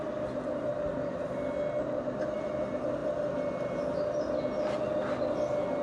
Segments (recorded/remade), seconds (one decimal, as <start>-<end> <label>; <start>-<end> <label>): 0.0-5.8 recorded